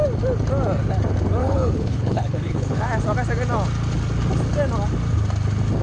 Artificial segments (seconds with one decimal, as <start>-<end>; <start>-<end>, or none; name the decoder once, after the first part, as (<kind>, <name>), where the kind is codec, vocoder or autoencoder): 1.4-2.8 (codec, HILCodec)